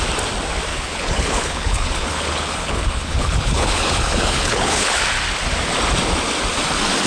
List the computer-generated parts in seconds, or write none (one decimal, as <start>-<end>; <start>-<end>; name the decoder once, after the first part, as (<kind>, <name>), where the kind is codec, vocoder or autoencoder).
0.7-5.0 (codec, HILCodec)